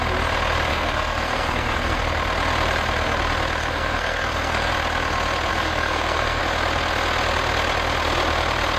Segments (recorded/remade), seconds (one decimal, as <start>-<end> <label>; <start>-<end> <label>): 0.0-0.7 recorded; 0.7-2.0 remade; 2.0-3.6 recorded; 3.6-4.7 remade; 4.7-5.5 recorded; 5.5-6.4 remade; 6.4-8.8 recorded